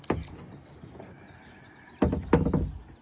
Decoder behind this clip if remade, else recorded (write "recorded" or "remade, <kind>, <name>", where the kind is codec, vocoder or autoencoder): recorded